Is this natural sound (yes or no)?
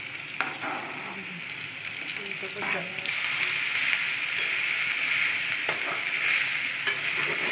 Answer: yes